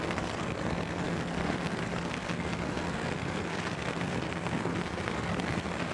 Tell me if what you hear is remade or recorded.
remade